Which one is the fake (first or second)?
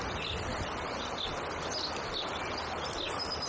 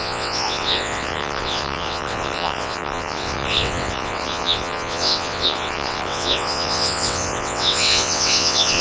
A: second